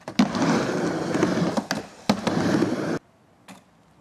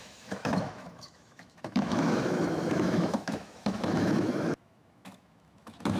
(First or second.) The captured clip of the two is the first